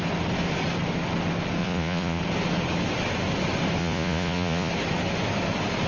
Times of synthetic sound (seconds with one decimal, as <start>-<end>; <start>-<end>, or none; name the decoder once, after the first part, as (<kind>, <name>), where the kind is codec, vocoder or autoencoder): 1.6-2.2 (vocoder, Vocos); 3.8-4.7

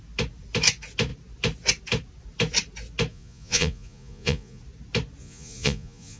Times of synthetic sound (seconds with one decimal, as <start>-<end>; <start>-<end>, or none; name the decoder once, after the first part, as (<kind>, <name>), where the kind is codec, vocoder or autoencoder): 3.1-4.6 (vocoder, Vocos); 5.2-6.2

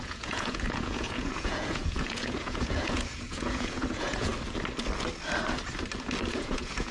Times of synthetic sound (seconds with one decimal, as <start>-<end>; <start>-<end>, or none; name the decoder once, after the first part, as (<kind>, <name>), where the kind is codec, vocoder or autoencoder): 0.0-4.3 (vocoder, Vocos); 6.3-6.9